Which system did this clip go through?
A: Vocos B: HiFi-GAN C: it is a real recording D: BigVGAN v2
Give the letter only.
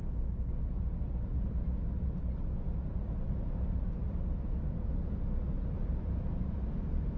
C